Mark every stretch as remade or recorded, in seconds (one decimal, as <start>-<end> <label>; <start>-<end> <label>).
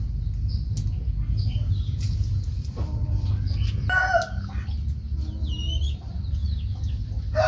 0.0-7.5 recorded